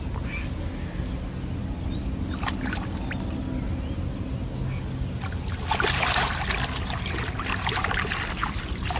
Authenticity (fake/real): real